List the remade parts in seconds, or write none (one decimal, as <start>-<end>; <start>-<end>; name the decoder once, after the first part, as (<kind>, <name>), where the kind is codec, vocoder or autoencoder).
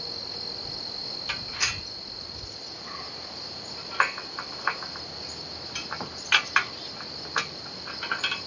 none